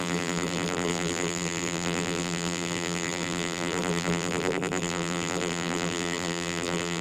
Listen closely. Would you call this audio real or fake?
fake